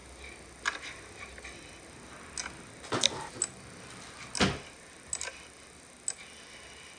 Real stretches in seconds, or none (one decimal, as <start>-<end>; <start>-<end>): 0.0-7.0